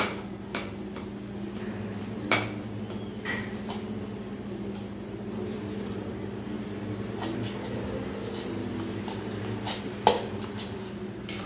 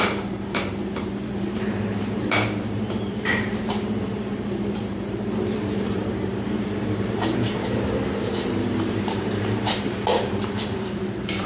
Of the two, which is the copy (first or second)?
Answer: second